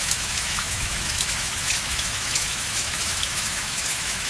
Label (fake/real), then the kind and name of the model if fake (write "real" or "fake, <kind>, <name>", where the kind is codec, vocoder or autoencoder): fake, autoencoder, DAC-VAE